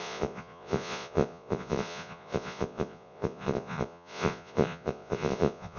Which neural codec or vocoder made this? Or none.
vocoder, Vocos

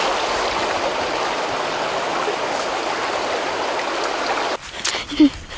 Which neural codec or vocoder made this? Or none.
none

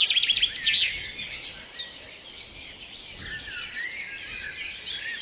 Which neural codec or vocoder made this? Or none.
none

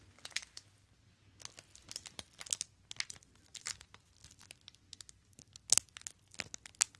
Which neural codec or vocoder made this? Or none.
none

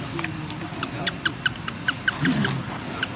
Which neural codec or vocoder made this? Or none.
none